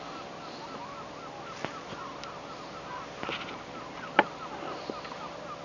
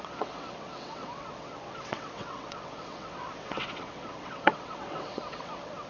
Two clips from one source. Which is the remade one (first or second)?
second